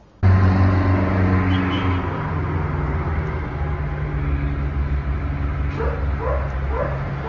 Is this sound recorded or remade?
recorded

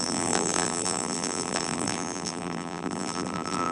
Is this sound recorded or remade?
remade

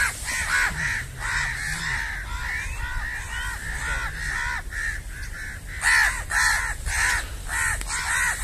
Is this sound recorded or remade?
recorded